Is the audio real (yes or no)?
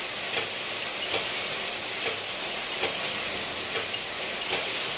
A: yes